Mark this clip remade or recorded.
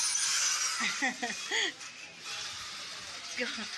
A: recorded